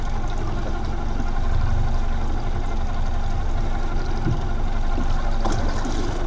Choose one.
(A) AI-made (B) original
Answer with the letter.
B